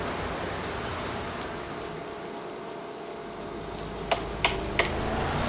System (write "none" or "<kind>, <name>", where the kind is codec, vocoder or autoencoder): none